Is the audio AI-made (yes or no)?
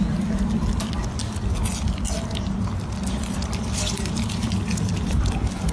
no